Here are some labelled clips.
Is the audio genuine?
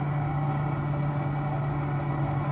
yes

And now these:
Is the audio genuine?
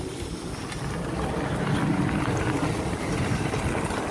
yes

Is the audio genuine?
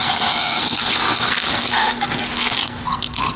no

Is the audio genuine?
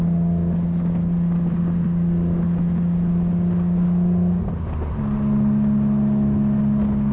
yes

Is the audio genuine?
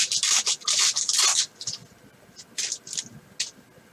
yes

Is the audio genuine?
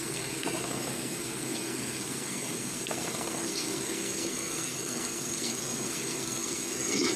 no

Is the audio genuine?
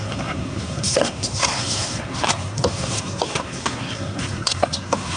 no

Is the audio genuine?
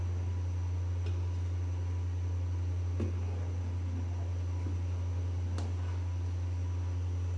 yes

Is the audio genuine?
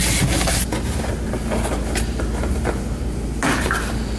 yes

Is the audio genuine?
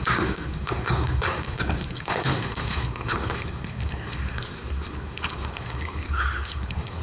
no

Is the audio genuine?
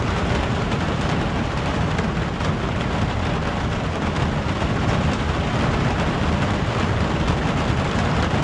yes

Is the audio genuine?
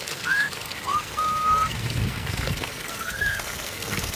no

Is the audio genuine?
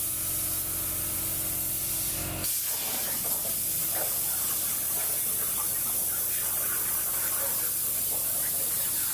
yes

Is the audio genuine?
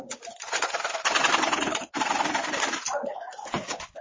yes